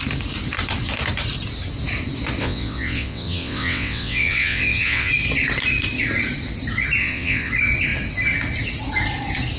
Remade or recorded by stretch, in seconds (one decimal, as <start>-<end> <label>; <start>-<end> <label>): 0.0-2.4 recorded; 2.4-5.1 remade; 5.1-7.0 recorded; 7.0-7.5 remade; 7.5-9.6 recorded